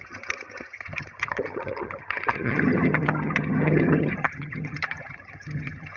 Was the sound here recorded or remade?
remade